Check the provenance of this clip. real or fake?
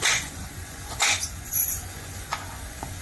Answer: fake